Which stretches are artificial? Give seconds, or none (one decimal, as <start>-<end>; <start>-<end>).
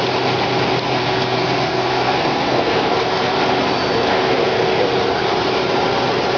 1.0-3.6; 4.1-4.8